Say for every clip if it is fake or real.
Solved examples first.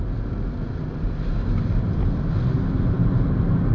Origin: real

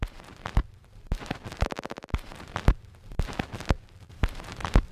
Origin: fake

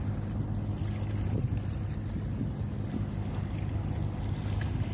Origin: real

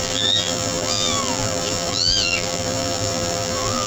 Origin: fake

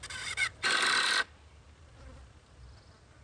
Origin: real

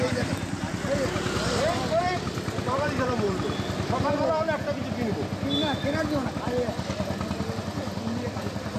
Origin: real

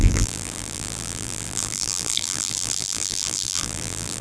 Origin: fake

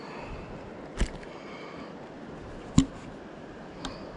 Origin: real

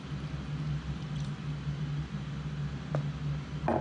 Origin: real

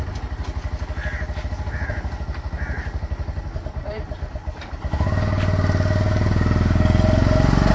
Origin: real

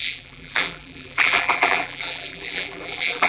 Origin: fake